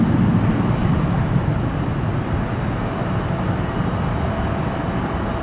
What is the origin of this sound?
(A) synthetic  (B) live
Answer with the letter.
B